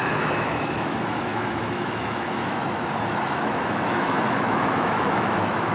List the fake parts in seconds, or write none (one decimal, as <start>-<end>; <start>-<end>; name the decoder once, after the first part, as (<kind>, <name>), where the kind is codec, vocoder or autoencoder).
0.0-5.7 (autoencoder, DAC-VAE)